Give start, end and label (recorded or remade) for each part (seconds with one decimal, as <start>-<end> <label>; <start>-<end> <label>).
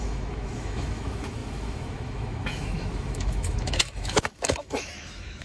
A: 0.0-5.4 remade